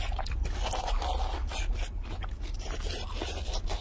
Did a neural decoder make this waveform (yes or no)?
no